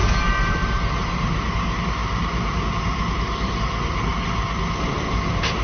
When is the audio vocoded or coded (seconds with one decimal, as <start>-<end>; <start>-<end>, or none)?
0.0-4.1; 4.8-5.6